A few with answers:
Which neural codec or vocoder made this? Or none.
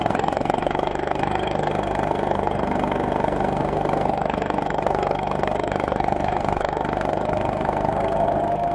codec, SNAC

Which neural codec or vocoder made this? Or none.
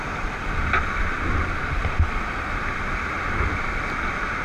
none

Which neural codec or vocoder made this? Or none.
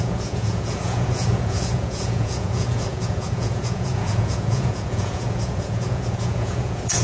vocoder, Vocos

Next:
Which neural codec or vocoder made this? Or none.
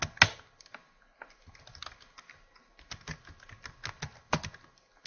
none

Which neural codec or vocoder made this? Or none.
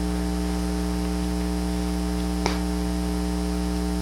none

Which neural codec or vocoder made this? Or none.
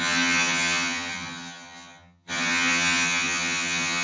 vocoder, HiFi-GAN